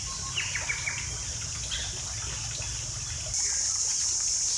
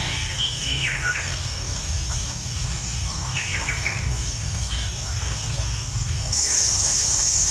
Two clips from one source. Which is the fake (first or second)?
second